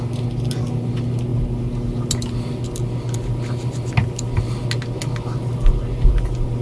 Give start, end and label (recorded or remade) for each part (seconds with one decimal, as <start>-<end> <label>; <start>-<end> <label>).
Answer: 0.0-6.6 recorded